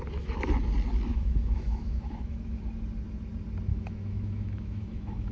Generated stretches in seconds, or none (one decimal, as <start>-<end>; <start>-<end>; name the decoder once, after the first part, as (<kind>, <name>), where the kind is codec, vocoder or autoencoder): 1.1-2.6 (autoencoder, DAC-VAE); 3.7-5.3